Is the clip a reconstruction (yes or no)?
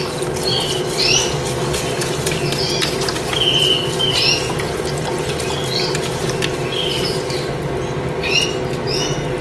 no